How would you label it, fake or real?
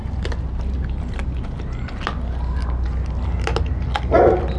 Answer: real